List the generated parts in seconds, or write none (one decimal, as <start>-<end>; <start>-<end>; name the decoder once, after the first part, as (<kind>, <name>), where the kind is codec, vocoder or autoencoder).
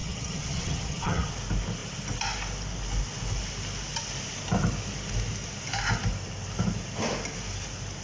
0.0-1.3 (vocoder, HiFi-GAN)